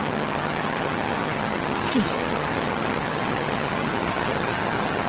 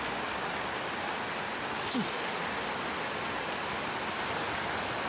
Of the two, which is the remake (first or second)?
first